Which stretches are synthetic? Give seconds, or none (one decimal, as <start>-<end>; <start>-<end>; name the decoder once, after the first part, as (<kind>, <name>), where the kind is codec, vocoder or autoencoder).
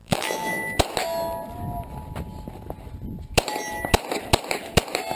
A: 0.0-0.8 (vocoder, BigVGAN v2)